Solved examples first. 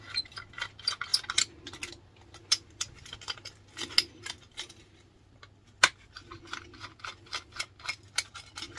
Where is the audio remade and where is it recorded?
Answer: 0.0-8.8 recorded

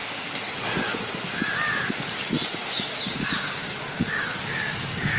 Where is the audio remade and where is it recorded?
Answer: 0.0-2.6 recorded; 2.6-5.2 remade

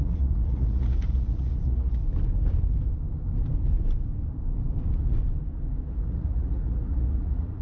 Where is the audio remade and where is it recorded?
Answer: 0.0-2.0 remade; 2.0-5.9 recorded; 5.9-7.6 remade

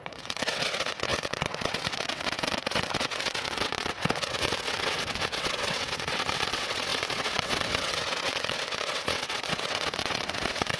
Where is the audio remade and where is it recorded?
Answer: 0.0-10.8 remade

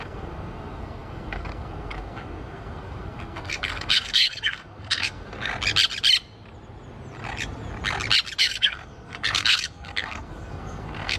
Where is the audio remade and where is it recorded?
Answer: 0.0-5.5 remade; 5.5-8.4 recorded; 8.4-11.2 remade